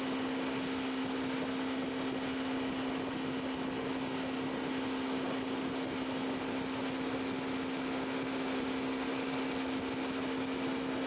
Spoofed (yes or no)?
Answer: no